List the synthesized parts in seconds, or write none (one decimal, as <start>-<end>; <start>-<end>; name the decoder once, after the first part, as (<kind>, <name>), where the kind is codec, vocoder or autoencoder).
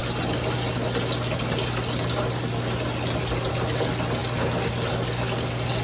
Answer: none